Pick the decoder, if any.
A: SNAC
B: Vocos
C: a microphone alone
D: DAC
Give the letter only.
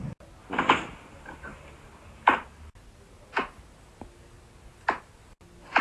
C